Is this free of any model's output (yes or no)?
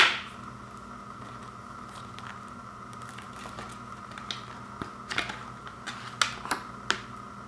yes